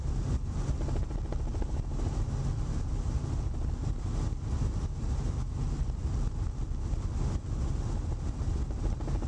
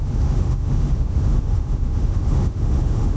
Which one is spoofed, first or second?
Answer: second